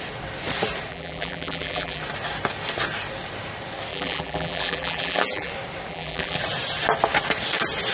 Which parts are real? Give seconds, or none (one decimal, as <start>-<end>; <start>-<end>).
0.0-0.9; 2.0-3.9; 5.5-5.9; 6.4-7.9